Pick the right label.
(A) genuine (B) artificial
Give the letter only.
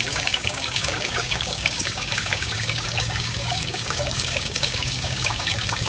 B